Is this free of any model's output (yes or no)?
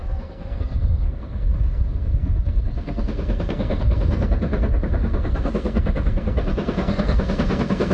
no